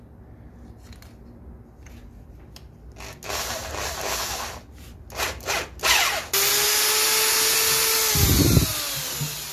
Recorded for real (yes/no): yes